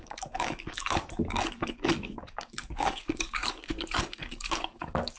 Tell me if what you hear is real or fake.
fake